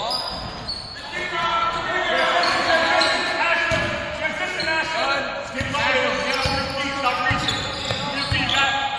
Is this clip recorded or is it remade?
recorded